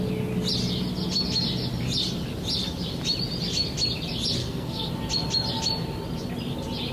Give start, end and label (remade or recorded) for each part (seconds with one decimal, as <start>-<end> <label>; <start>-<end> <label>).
0.0-4.4 recorded; 4.4-4.9 remade; 4.9-6.9 recorded